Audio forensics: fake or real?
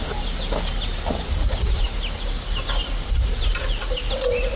real